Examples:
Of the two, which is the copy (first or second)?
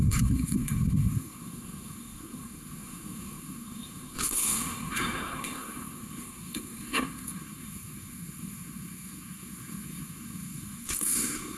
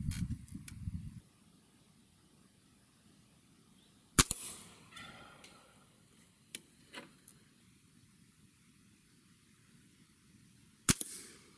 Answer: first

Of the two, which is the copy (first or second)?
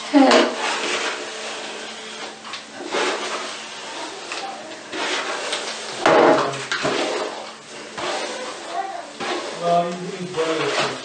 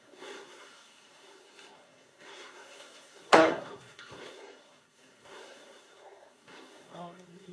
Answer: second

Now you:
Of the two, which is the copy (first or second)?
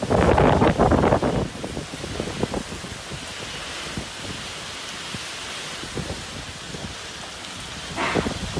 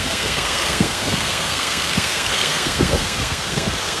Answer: second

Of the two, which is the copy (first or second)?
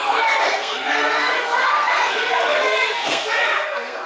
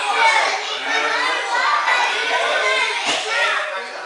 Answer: first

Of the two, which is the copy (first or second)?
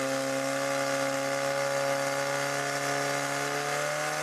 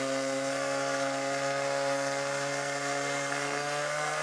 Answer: second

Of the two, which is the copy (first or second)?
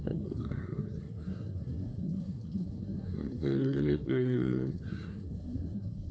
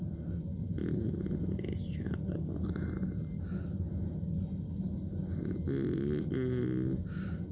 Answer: first